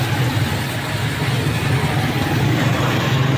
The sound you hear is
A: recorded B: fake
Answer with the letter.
A